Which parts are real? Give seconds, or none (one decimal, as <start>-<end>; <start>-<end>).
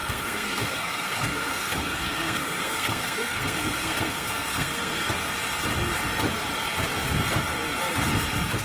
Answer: 5.1-8.6